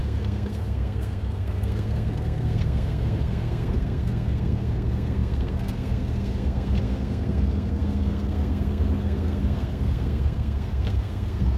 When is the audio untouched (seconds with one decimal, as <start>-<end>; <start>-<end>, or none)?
none